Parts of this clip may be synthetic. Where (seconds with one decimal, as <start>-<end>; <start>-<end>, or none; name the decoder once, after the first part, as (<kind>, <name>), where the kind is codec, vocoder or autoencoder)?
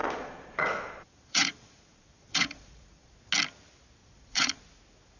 0.0-3.1 (vocoder, Vocos); 4.0-4.6